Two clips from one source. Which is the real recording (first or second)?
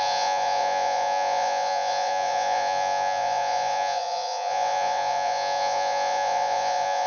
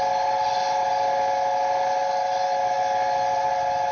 second